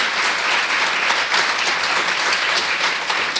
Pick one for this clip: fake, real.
real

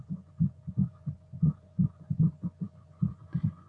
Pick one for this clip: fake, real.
fake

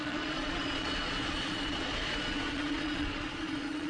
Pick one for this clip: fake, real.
fake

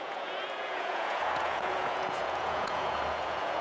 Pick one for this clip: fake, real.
fake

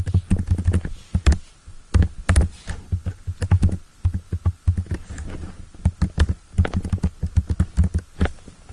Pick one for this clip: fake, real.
real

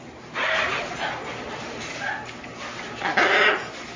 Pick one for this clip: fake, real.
real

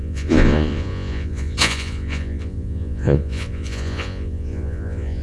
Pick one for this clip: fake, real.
fake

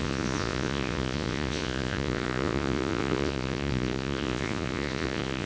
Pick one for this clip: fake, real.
fake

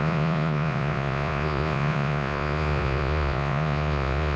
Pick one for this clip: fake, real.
fake